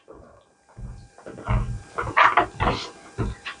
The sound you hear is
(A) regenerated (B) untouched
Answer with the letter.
B